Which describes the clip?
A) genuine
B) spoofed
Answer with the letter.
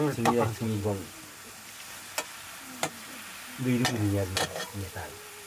A